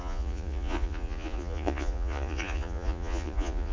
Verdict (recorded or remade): remade